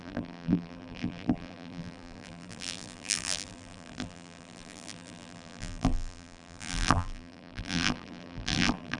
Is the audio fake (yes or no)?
yes